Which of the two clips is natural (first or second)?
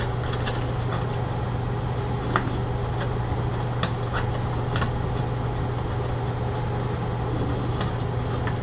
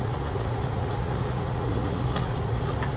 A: first